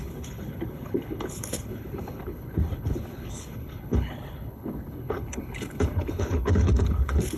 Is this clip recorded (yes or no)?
no